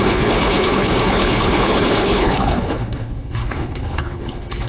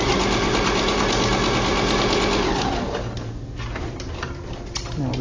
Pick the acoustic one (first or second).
second